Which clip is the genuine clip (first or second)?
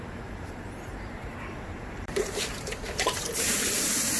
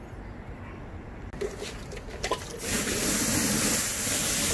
second